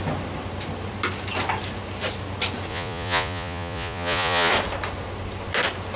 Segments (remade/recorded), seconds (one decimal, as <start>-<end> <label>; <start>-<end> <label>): 0.0-2.7 recorded; 2.7-4.5 remade; 4.5-6.0 recorded